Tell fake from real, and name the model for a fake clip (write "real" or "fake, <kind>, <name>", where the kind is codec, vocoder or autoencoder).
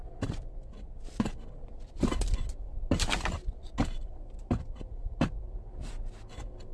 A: real